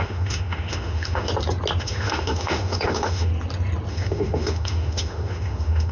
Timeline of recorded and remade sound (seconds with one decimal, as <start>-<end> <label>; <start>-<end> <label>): 0.0-1.3 remade; 1.3-1.8 recorded; 1.8-3.3 remade; 3.3-3.9 recorded; 3.9-5.9 remade